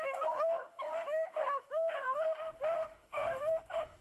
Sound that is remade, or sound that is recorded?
remade